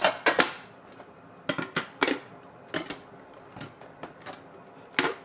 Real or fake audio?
real